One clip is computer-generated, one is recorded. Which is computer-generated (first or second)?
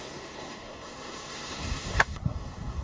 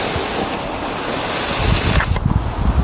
first